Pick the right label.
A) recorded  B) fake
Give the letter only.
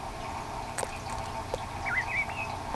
A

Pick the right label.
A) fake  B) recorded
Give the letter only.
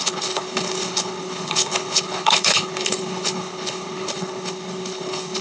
A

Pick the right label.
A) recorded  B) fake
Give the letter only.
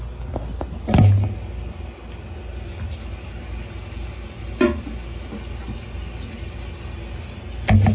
A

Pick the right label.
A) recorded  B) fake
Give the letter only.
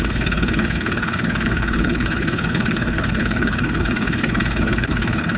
B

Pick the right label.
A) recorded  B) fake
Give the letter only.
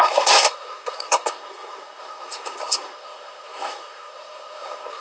B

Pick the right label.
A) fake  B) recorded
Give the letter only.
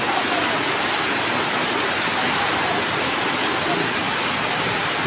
B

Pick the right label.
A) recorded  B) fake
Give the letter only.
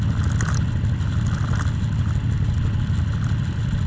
A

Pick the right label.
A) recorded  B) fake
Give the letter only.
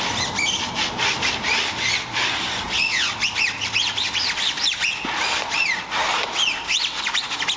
A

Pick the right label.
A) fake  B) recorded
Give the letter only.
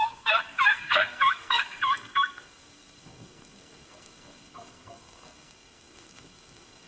A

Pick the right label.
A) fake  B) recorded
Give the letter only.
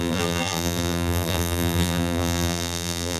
A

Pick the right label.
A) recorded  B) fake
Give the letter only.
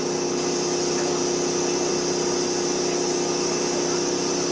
A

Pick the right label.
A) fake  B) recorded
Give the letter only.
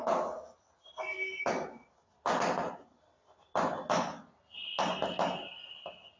B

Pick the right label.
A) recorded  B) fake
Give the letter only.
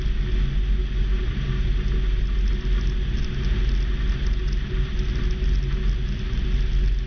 A